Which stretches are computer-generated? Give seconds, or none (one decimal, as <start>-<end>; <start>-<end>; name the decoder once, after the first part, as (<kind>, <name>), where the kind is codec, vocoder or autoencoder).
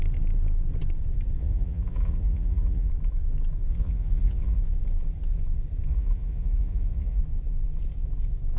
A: 1.4-2.9 (vocoder, Vocos); 3.7-4.6; 5.9-7.2